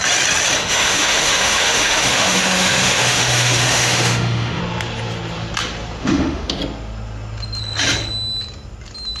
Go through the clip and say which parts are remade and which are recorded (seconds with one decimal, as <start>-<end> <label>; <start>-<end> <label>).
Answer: 0.0-0.6 recorded; 0.6-4.6 remade; 4.6-6.0 recorded; 6.0-6.6 remade; 6.6-9.2 recorded